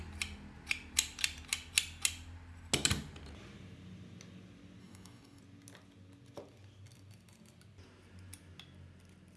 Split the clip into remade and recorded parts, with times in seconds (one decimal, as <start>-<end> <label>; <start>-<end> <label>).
0.0-4.8 recorded; 4.8-5.4 remade; 5.4-9.4 recorded